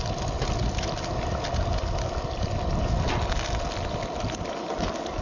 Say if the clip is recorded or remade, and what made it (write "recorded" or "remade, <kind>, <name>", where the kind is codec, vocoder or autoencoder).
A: recorded